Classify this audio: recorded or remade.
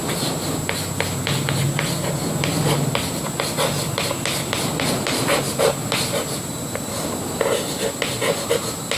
recorded